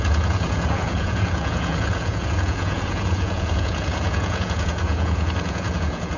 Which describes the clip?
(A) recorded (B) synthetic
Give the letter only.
B